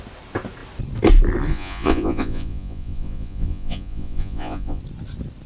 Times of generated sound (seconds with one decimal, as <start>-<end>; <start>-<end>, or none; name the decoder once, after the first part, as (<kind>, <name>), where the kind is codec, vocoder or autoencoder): 1.5-4.8 (vocoder, Vocos)